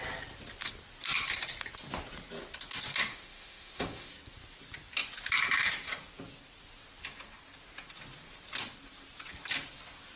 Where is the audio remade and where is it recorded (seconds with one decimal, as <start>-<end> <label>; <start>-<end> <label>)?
0.0-3.1 recorded; 3.1-4.1 remade; 4.1-10.2 recorded